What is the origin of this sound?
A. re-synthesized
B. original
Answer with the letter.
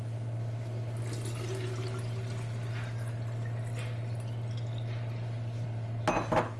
B